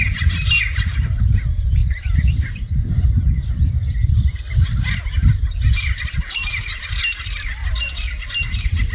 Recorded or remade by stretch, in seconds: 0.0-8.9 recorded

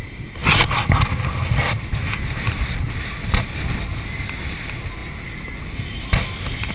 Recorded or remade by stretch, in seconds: 0.0-6.7 recorded

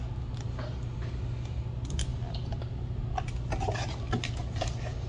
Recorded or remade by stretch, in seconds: 0.0-5.1 recorded

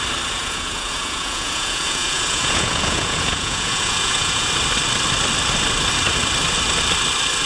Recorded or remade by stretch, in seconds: 0.0-0.4 recorded; 0.4-4.5 remade; 4.5-7.5 recorded

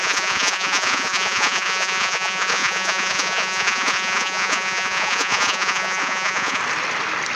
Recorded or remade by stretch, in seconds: 0.0-6.6 remade; 6.6-7.4 recorded

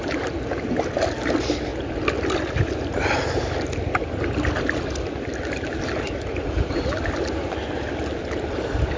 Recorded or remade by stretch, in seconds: 0.0-9.0 recorded